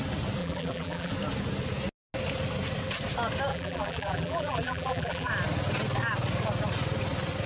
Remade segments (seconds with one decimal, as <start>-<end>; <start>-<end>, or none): 0.4-1.1; 3.5-5.3